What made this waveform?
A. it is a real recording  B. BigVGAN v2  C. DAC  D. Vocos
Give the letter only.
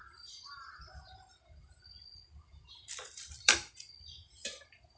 B